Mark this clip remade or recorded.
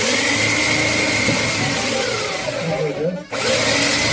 recorded